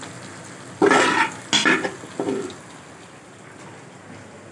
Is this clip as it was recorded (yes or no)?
yes